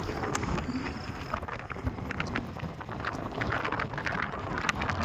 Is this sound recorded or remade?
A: recorded